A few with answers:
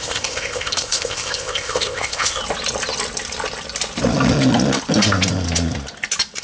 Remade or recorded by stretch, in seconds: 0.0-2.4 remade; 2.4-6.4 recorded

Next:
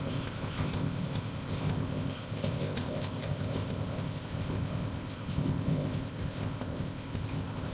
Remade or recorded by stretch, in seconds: 0.0-7.7 remade

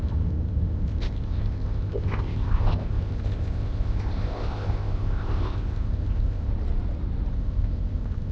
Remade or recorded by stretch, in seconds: 0.0-6.5 remade; 6.5-7.3 recorded; 7.3-8.3 remade

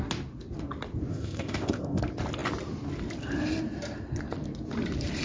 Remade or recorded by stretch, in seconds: 0.0-1.1 recorded; 1.1-2.0 remade; 2.0-5.2 recorded

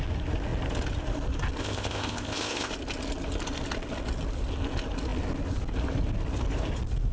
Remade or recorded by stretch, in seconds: 0.0-1.6 recorded; 1.6-2.7 remade; 2.7-7.1 recorded

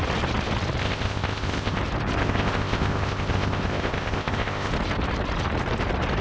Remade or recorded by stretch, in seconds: 0.0-0.8 recorded; 0.8-1.8 remade; 1.8-2.2 recorded; 2.2-4.7 remade; 4.7-6.2 recorded

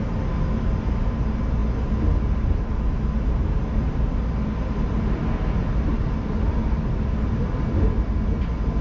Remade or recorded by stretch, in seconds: 0.0-8.8 recorded